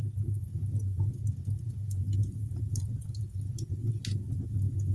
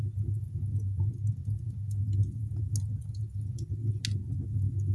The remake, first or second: first